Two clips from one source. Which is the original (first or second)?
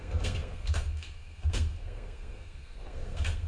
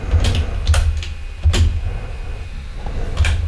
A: second